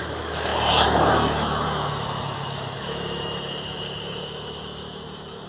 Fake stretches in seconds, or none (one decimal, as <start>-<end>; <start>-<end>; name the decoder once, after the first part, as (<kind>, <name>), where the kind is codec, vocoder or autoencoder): 0.0-5.5 (autoencoder, DAC-VAE)